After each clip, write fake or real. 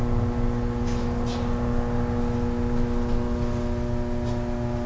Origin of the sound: real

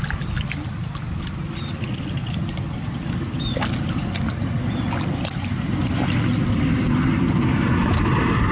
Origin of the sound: real